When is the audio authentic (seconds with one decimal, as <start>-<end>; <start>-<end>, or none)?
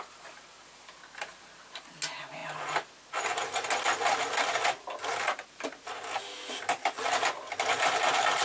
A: 0.0-8.4